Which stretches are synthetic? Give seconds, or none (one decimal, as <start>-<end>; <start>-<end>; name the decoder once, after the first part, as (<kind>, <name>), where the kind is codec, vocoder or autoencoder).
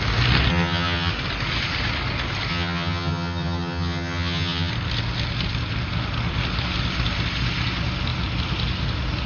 0.5-1.1 (vocoder, HiFi-GAN); 2.5-4.7